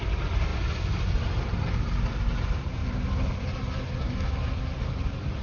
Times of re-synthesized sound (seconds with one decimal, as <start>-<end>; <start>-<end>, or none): none